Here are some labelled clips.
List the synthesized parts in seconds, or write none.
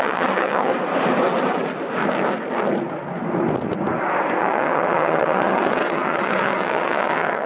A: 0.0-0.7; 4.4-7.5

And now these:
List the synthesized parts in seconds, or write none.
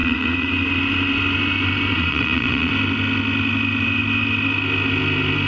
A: 0.0-0.5; 1.9-2.7